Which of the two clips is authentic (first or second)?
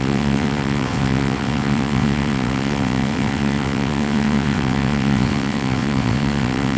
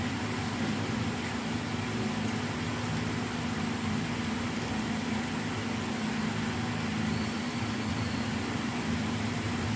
second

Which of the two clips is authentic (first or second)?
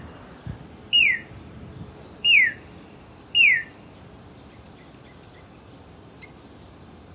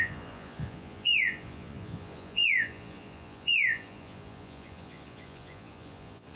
first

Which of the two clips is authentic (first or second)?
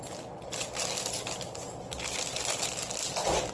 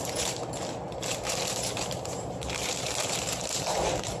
first